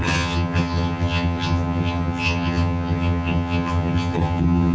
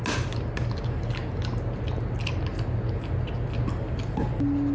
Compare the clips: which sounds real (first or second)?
second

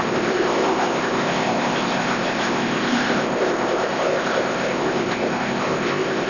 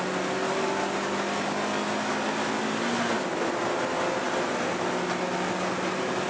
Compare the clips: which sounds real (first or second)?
second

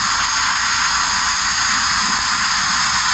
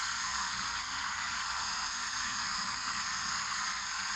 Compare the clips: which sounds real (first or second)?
first